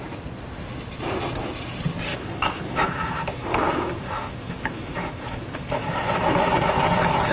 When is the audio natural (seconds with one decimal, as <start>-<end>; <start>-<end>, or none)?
0.0-2.1; 6.5-7.3